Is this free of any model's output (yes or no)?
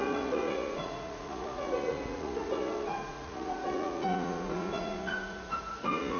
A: no